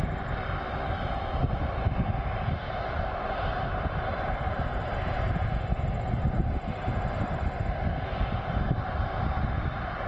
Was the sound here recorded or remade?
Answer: recorded